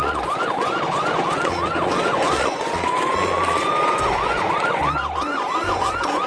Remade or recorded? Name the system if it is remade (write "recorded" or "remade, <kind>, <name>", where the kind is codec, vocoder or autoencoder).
remade, vocoder, Vocos